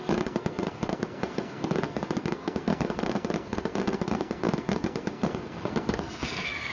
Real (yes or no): no